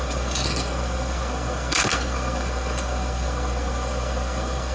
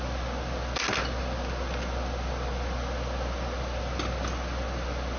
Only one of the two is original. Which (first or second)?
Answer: second